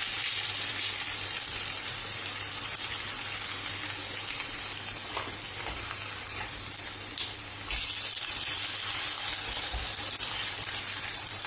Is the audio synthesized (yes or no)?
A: no